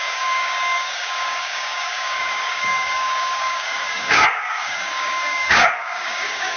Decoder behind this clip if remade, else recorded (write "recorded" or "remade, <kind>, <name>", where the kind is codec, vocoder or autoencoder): remade, codec, DAC